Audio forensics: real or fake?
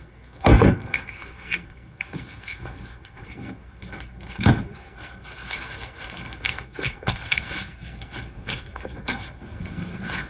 fake